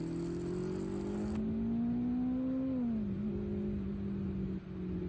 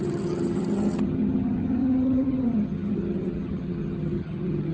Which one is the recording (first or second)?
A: first